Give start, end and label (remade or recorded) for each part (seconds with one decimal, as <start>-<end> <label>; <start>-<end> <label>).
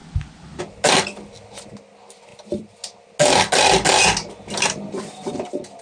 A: 0.0-5.8 recorded